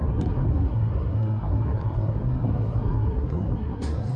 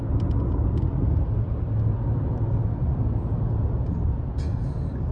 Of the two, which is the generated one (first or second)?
first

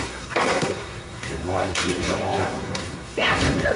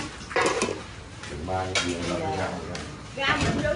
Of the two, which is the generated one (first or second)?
first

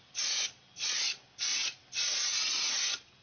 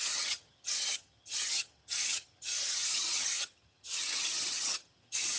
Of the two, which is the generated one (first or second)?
second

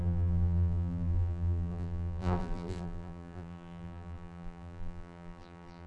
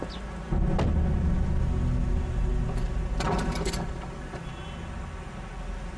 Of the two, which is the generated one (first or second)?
first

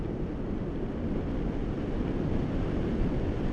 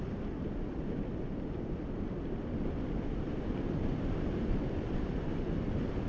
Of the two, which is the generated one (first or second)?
second